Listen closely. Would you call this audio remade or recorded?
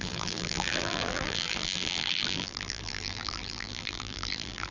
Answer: remade